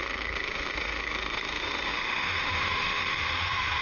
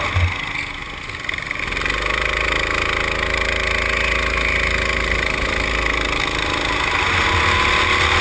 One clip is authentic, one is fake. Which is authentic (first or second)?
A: second